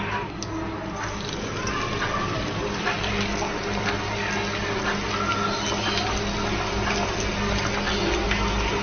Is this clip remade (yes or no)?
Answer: no